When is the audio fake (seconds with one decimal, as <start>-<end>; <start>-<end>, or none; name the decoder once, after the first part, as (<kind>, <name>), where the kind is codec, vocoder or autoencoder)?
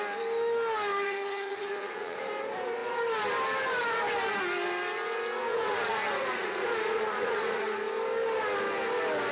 0.9-2.2 (vocoder, Vocos); 5.5-7.6